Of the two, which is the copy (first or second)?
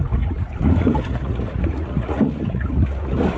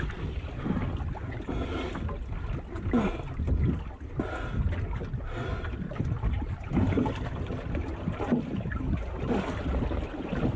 first